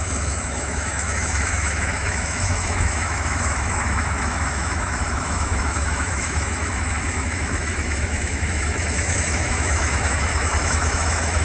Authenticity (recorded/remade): remade